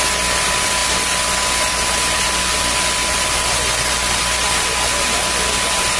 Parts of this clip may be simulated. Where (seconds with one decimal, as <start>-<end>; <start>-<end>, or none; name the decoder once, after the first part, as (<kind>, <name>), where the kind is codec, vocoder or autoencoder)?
none